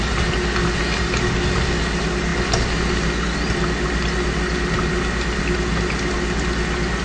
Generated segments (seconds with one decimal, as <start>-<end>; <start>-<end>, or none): none